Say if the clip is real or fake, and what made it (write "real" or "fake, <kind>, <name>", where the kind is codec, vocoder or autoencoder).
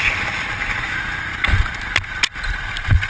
real